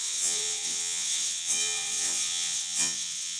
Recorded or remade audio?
remade